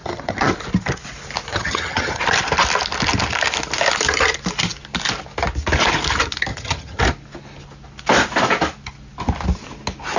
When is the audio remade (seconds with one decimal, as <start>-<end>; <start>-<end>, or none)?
0.0-0.5; 1.5-2.2; 6.5-7.0